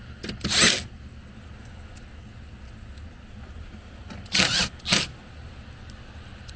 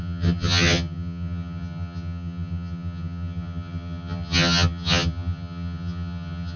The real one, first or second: first